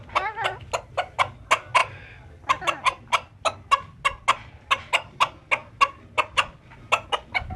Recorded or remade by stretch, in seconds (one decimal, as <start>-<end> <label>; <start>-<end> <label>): 0.0-7.6 recorded